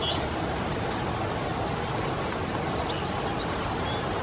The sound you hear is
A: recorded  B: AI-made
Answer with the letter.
A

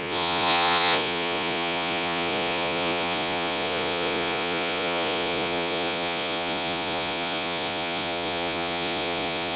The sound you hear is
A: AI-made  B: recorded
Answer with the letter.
A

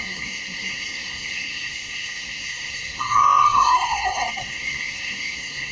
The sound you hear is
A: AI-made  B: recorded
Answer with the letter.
A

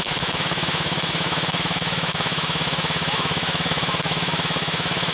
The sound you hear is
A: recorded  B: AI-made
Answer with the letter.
B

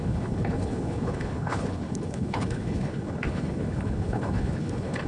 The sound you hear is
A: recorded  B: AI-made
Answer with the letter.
B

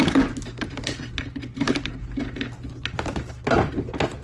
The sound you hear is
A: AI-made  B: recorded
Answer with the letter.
B